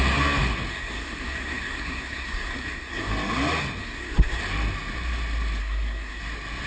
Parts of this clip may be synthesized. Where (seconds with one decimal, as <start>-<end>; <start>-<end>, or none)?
0.7-3.1; 3.8-4.4; 5.6-6.2